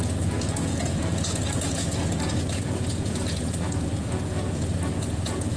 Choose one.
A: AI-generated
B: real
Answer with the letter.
A